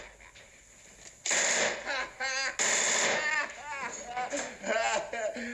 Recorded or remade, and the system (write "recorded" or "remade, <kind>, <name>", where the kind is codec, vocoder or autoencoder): recorded